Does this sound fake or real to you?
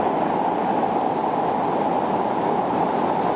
fake